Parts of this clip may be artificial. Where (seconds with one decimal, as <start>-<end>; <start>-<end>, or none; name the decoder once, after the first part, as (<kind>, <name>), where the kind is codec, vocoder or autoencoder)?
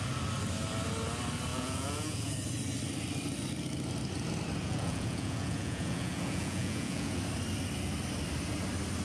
1.5-2.3 (vocoder, Vocos); 4.6-7.2